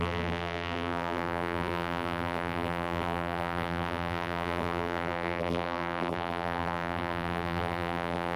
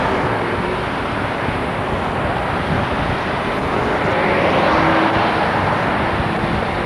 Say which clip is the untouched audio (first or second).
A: second